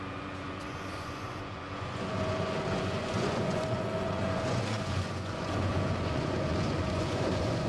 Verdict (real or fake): fake